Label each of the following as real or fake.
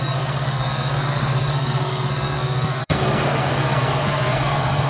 fake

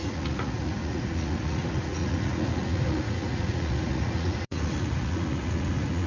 fake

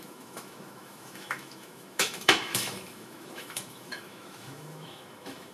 fake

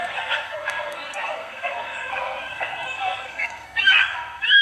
fake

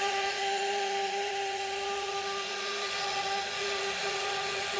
fake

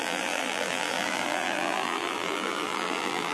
fake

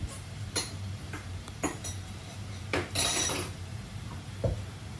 fake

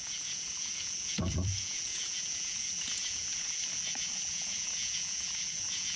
fake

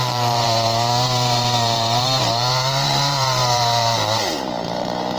fake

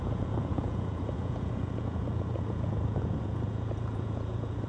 fake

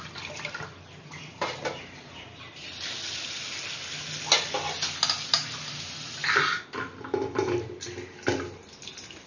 real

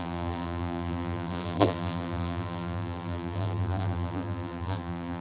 fake